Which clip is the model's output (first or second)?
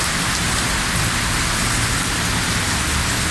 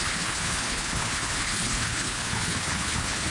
second